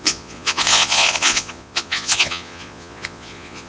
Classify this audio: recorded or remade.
remade